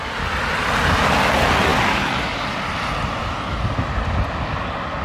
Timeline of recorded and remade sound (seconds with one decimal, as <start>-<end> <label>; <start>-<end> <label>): 0.0-5.0 recorded